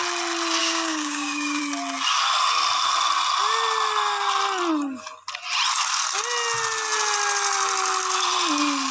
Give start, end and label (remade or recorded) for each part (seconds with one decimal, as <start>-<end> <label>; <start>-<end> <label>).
0.0-0.6 recorded; 0.6-1.6 remade; 1.6-8.9 recorded